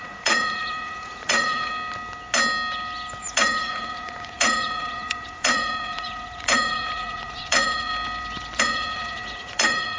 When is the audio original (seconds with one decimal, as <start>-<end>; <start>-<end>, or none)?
1.7-3.2; 7.9-8.6